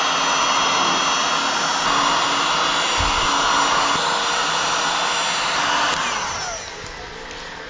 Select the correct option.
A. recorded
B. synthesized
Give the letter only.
A